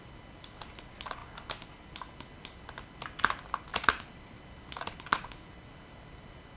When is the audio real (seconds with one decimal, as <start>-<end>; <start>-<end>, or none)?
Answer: 0.0-3.7; 4.4-6.6